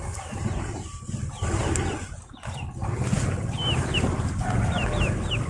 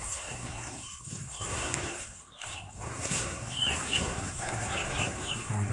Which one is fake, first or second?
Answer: second